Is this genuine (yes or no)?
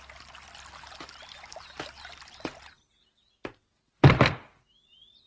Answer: yes